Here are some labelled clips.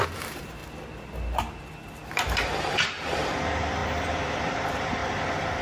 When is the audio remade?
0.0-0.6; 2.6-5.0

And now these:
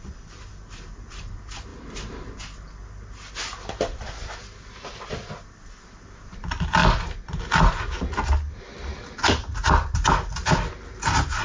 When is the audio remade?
1.7-2.2; 6.8-7.4

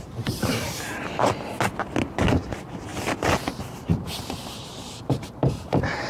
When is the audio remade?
0.0-1.0; 2.2-2.9; 3.4-6.1

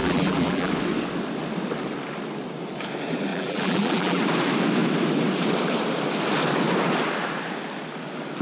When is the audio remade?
0.0-0.7; 3.3-4.2

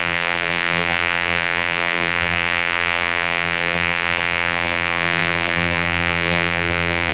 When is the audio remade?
0.0-7.1

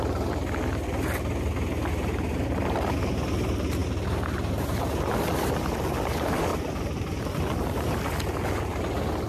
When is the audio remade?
3.8-4.5; 6.5-7.2

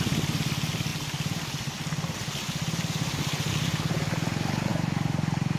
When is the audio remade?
none